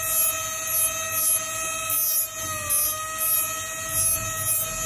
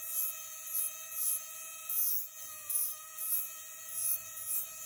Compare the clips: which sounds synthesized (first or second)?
second